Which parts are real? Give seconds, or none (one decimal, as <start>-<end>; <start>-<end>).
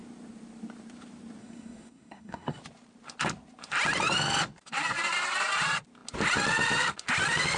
0.0-1.4; 2.6-7.6